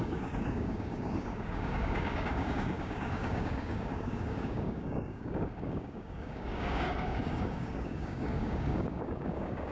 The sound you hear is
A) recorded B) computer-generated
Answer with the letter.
B